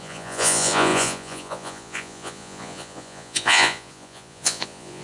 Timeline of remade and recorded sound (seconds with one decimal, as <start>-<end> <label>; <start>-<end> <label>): 0.0-5.0 remade